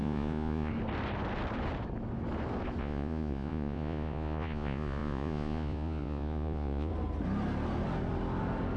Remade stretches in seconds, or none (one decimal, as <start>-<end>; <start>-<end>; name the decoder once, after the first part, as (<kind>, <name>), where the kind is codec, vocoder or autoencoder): 0.0-0.7 (vocoder, Vocos); 2.8-6.9